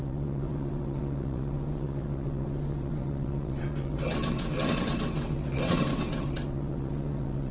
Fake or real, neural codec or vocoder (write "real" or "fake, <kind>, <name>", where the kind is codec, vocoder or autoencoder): fake, vocoder, WaveNeXt